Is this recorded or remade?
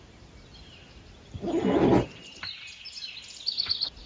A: recorded